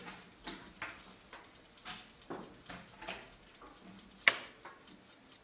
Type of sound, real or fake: real